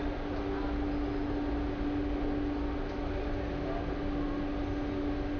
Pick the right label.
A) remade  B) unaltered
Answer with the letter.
B